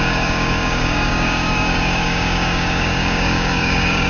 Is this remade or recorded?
remade